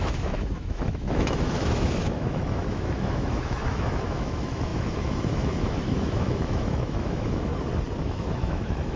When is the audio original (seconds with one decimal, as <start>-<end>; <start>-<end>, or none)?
7.5-8.0